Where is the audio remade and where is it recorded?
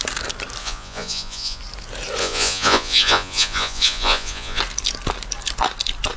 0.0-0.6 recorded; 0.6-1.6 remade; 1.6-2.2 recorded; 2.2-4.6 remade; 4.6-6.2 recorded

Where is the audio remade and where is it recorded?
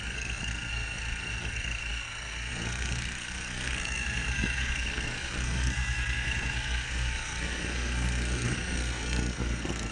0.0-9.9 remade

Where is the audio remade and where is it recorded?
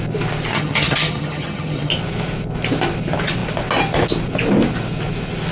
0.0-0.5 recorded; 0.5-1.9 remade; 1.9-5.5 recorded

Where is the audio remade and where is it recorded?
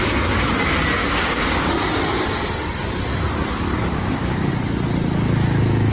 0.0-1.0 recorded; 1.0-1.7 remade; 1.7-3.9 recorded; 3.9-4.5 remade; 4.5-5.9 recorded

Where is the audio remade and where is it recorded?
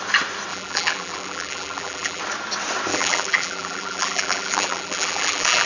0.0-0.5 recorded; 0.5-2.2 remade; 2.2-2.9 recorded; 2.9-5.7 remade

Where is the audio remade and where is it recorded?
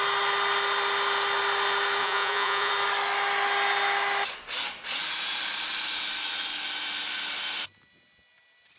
0.0-2.0 recorded; 2.0-2.7 remade; 2.7-8.8 recorded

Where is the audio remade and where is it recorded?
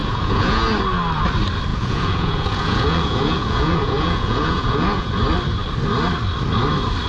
0.0-0.6 remade; 0.6-1.7 recorded; 1.7-5.1 remade; 5.1-7.1 recorded